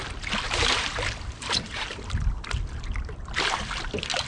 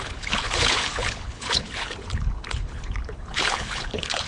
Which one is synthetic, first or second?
second